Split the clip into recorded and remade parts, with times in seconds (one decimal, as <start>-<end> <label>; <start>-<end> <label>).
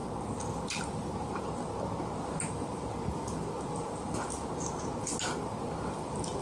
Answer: 0.0-6.4 recorded